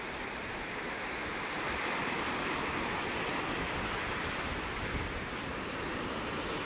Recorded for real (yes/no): yes